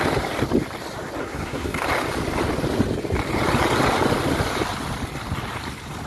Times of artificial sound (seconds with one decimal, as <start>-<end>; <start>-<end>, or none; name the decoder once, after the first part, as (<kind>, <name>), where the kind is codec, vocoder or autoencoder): 1.2-1.8 (codec, SNAC)